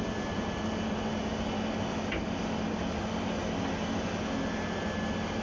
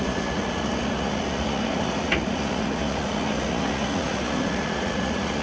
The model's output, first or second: second